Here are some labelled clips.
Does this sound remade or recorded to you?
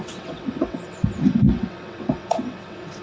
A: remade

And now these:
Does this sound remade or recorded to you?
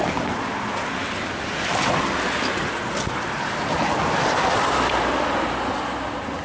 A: recorded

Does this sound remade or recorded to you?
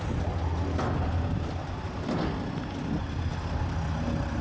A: recorded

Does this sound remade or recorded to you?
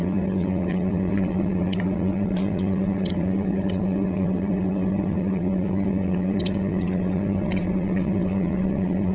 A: remade